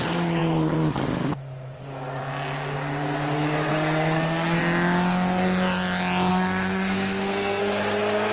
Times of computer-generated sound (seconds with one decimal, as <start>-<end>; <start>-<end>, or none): 3.7-4.6; 6.3-7.6